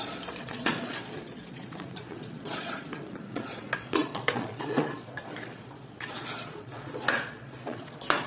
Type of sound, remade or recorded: remade